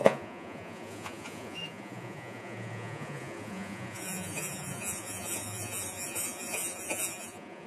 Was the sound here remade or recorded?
remade